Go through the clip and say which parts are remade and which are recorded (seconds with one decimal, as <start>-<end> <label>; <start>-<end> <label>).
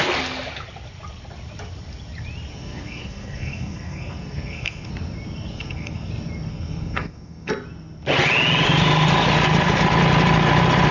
0.0-2.5 recorded; 2.5-4.9 remade; 4.9-5.5 recorded; 5.5-6.1 remade; 6.1-6.5 recorded; 6.5-7.5 remade; 7.5-10.9 recorded